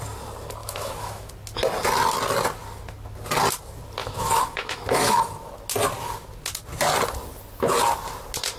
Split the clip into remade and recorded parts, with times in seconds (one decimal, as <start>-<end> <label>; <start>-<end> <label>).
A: 0.0-0.6 recorded; 0.6-1.3 remade; 1.3-4.0 recorded; 4.0-5.2 remade; 5.2-8.6 recorded